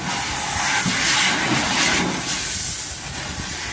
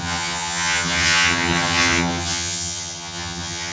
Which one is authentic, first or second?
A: first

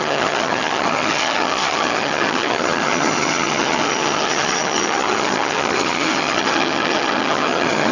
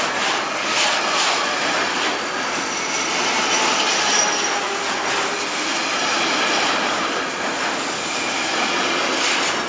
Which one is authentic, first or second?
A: second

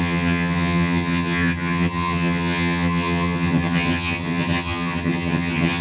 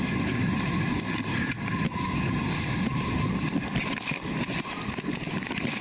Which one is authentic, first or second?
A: second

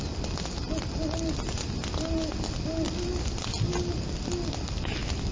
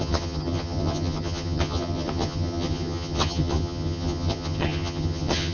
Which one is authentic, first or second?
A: first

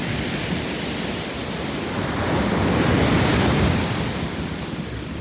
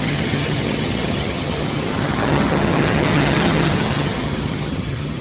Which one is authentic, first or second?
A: first